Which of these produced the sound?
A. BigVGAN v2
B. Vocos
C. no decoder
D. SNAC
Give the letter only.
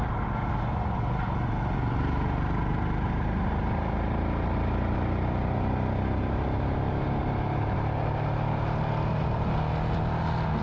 C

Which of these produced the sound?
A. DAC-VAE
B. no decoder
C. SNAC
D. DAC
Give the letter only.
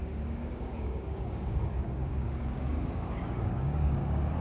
D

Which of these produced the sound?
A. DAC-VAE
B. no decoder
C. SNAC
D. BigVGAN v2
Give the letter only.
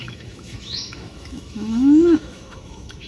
A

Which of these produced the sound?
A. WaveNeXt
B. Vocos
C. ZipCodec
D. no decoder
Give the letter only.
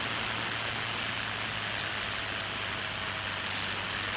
D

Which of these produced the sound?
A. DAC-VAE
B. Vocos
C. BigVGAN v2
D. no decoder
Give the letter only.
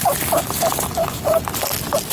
D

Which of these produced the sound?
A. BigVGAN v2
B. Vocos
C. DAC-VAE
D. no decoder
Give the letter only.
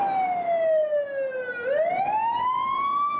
D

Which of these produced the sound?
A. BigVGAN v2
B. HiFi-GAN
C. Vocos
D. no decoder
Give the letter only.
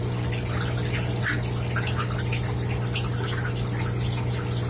D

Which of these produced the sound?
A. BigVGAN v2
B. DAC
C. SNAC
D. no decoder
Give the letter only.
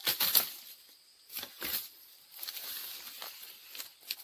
D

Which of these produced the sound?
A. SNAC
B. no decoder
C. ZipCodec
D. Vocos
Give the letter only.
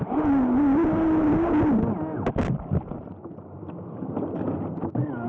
B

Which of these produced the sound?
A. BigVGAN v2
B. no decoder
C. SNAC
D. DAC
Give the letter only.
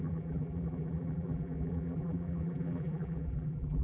A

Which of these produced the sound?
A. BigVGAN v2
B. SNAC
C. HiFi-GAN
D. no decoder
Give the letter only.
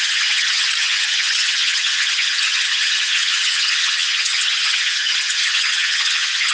C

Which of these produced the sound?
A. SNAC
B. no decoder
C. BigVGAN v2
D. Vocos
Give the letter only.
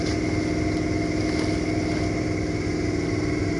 B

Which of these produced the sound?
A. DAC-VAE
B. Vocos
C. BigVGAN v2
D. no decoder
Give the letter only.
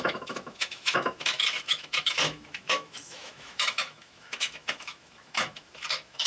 A